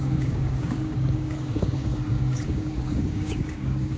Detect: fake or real fake